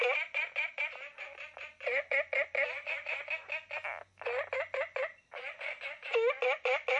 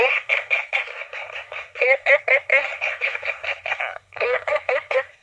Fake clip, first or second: second